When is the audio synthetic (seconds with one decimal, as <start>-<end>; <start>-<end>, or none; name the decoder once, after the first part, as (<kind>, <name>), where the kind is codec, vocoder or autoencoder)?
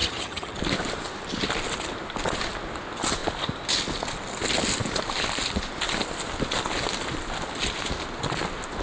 0.0-0.6 (vocoder, HiFi-GAN)